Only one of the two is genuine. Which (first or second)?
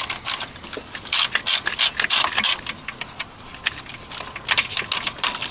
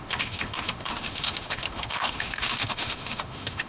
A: first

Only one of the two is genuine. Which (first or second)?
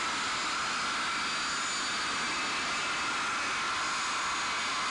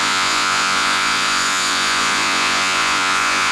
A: first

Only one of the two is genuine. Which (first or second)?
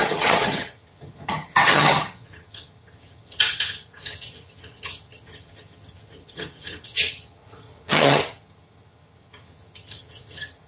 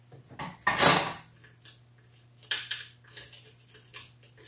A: second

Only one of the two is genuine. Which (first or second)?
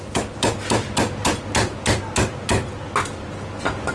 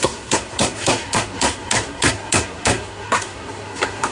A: first